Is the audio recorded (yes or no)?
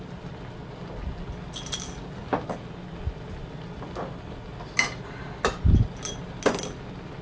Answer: yes